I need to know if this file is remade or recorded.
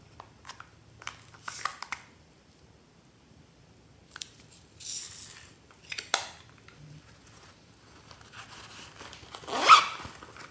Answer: recorded